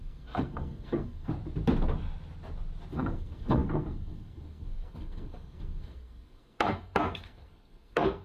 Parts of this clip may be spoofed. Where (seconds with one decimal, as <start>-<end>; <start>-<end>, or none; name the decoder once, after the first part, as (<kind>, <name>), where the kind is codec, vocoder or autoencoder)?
0.0-1.3 (codec, SNAC); 2.9-8.2